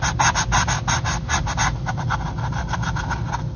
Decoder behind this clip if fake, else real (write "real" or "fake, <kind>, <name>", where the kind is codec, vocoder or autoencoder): real